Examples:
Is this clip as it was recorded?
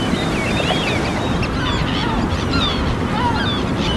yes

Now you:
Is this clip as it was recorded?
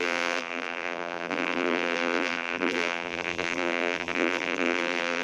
no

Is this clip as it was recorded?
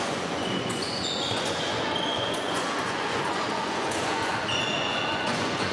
no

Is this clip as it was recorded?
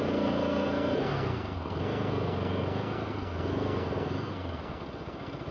no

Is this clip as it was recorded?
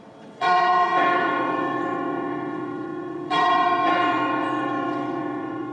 no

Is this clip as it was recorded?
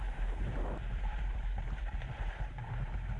no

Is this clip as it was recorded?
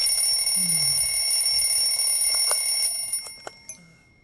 yes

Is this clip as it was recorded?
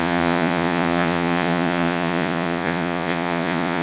no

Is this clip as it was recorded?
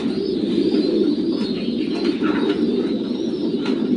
yes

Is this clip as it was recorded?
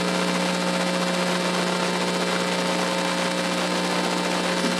yes